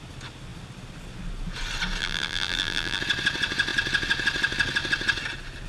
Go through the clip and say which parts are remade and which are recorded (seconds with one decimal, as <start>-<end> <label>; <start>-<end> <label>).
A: 0.0-2.0 recorded; 2.0-3.0 remade; 3.0-5.7 recorded